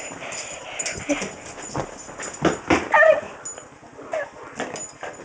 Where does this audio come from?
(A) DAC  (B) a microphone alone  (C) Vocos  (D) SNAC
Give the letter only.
B